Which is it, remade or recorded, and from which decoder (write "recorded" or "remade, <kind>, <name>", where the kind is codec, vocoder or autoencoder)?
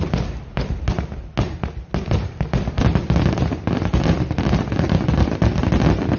recorded